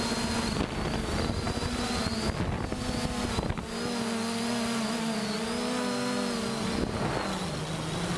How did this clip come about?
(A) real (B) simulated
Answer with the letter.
A